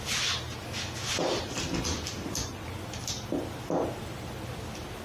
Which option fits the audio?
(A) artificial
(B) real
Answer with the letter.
B